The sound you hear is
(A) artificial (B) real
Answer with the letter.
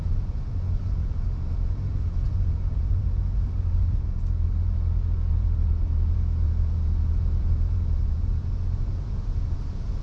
A